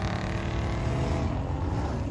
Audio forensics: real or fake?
real